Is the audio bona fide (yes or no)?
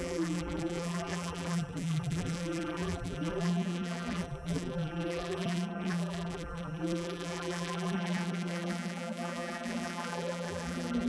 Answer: no